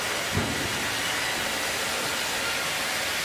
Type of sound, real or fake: real